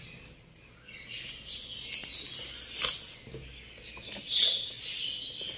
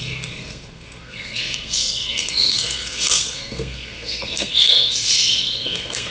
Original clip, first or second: first